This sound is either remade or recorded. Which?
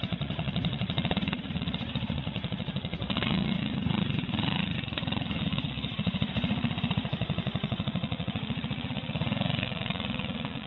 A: remade